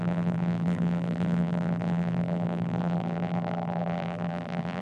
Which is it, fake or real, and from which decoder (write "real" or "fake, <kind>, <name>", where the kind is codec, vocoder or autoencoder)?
fake, vocoder, BigVGAN v2